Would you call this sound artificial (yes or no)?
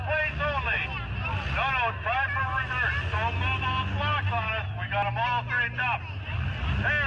no